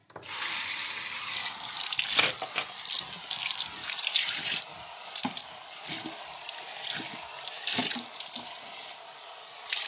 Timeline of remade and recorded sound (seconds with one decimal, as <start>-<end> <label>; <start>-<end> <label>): 0.0-0.7 remade; 0.7-3.8 recorded; 3.8-5.4 remade; 5.4-8.8 recorded; 8.8-9.5 remade; 9.5-9.9 recorded